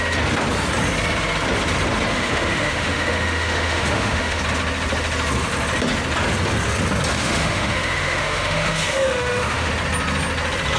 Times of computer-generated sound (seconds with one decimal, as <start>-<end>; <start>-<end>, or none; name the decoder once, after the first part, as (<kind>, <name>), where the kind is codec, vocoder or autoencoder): 2.1-4.4 (autoencoder, DAC-VAE); 7.1-9.7